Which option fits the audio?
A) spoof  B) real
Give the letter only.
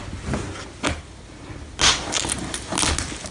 B